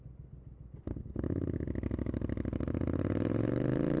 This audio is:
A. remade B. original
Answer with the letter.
B